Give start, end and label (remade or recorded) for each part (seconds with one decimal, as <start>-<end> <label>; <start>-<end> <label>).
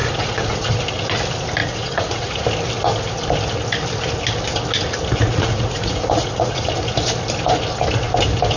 0.0-0.8 remade; 0.8-1.6 recorded; 1.6-2.4 remade; 2.4-5.2 recorded; 5.2-6.7 remade; 6.7-8.6 recorded